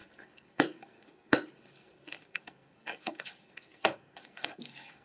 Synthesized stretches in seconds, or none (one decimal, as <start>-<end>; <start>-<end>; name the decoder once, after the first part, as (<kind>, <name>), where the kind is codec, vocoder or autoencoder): 0.0-5.0 (codec, SNAC)